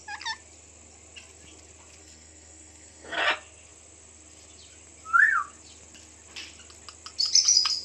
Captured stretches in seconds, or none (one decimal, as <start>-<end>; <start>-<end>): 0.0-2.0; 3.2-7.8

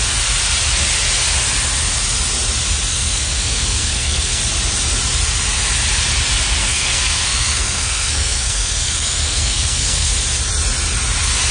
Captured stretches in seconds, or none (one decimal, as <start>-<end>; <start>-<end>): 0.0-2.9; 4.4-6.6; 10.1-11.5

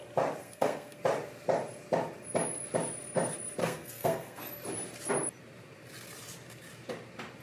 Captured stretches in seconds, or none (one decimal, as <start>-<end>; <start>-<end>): 0.0-0.4; 1.0-3.6; 4.4-7.4

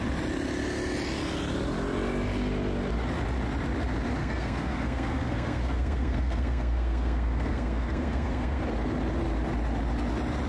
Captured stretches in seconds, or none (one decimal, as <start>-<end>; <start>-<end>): 0.0-4.2; 8.6-10.5

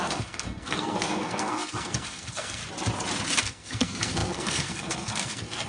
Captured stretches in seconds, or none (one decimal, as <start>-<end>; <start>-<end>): 2.6-3.4

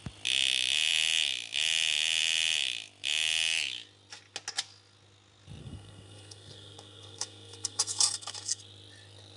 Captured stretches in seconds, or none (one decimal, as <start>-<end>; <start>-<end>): 0.0-5.6; 8.6-9.4

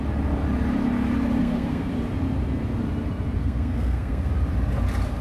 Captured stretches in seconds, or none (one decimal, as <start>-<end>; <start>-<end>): 0.0-1.4; 1.9-3.4; 4.3-5.2